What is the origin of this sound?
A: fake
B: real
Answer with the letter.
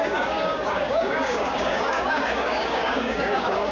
A